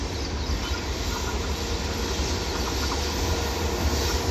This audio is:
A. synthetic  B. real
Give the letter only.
B